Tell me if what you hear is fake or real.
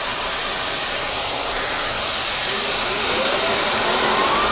real